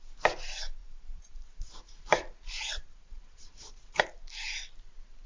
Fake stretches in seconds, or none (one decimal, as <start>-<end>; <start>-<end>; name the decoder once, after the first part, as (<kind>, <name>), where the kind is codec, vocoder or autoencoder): 0.8-4.0 (vocoder, BigVGAN v2)